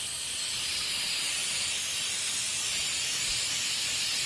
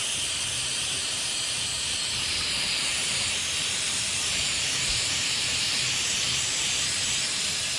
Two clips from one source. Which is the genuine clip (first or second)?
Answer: first